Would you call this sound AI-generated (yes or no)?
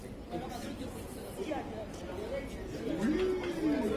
no